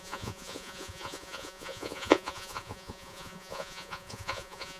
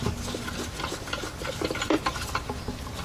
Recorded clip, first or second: second